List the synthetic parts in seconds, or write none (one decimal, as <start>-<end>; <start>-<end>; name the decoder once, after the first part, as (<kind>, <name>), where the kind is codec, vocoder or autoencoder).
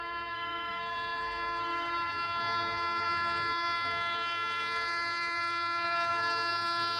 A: 0.0-7.0 (codec, SNAC)